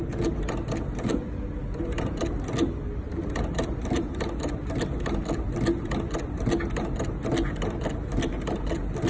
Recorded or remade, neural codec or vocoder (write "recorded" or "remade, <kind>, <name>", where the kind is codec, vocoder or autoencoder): recorded